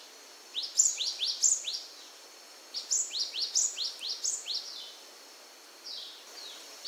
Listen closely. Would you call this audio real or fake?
real